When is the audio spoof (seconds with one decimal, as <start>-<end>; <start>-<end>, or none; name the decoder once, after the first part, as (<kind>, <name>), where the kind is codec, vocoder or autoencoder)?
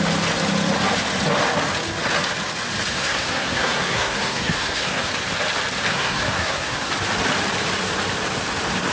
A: 2.9-5.1 (codec, SNAC); 5.9-6.9